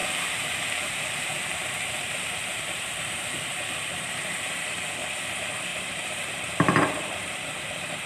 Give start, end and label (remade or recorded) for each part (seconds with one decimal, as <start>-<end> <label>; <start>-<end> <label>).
0.0-4.9 remade; 4.9-5.7 recorded; 5.7-8.1 remade